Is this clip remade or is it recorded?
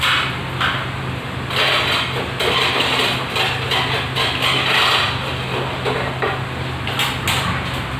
recorded